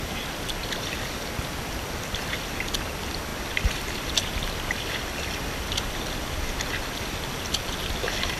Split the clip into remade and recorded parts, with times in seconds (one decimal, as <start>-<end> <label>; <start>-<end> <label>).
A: 0.0-8.4 recorded